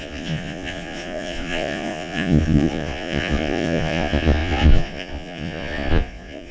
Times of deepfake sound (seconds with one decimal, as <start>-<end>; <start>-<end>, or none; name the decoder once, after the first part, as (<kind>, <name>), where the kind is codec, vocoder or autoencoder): 0.0-6.5 (vocoder, Vocos)